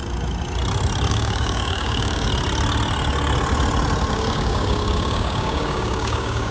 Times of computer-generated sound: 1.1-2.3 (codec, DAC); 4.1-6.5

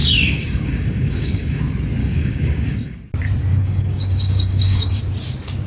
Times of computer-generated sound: 0.0-1.6 (codec, DAC); 2.0-3.0; 3.5-5.0

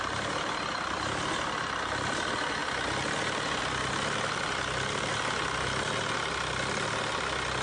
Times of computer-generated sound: none

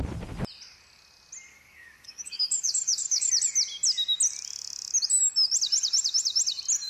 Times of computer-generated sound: 1.5-3.3 (codec, DAC)